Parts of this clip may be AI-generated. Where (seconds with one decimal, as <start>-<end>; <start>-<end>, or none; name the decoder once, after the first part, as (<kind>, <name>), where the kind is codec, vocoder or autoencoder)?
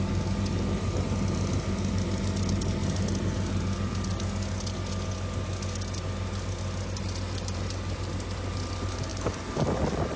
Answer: none